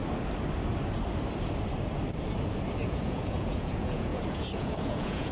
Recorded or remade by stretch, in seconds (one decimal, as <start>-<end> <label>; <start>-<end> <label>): 0.0-2.9 recorded; 2.9-5.3 remade